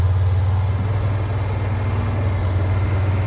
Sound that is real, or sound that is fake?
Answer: real